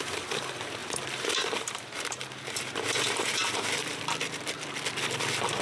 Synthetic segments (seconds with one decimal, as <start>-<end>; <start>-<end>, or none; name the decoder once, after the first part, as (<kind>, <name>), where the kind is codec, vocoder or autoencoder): 0.8-4.0 (vocoder, BigVGAN v2)